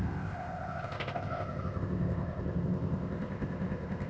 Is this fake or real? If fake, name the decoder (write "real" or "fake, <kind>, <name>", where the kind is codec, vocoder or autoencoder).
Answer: fake, codec, ZipCodec